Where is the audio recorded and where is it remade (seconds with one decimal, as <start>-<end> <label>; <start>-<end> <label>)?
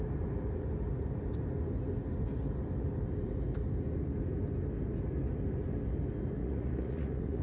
0.0-6.4 recorded; 6.4-7.4 remade